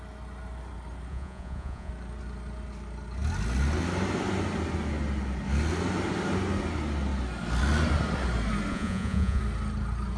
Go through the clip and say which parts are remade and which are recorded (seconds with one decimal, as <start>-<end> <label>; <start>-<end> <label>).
0.0-1.1 recorded; 1.1-1.9 remade; 1.9-8.7 recorded; 8.7-9.4 remade; 9.4-10.2 recorded